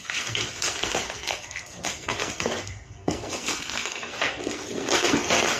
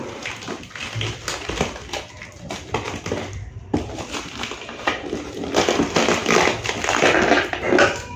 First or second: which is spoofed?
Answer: first